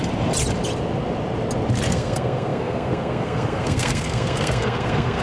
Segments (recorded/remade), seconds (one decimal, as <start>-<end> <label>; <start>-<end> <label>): 0.0-1.9 recorded; 1.9-5.2 remade